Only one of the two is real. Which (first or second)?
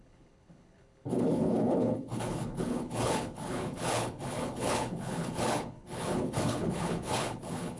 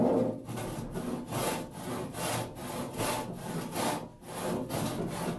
second